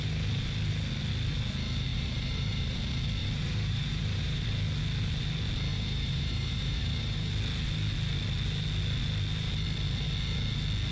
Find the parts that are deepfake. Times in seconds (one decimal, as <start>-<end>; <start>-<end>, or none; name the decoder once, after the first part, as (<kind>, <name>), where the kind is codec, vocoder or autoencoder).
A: 1.9-2.8 (vocoder, BigVGAN v2); 3.2-4.4; 5.7-7.3